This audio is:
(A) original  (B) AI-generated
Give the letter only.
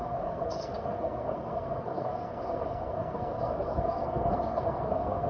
B